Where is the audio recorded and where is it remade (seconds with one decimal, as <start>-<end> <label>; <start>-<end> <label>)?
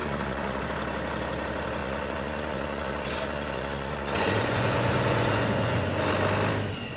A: 0.0-0.6 remade; 0.6-1.8 recorded; 1.8-6.0 remade; 6.0-7.0 recorded